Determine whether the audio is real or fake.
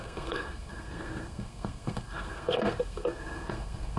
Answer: fake